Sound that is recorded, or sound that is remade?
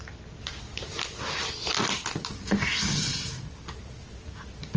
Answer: recorded